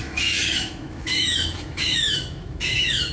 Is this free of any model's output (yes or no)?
no